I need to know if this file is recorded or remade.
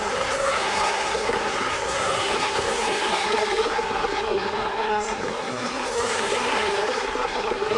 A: remade